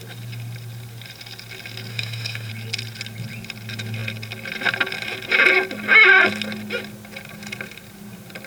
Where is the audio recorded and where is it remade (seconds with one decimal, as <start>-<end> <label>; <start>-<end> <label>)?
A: 0.0-1.9 recorded; 1.9-2.5 remade; 2.5-8.5 recorded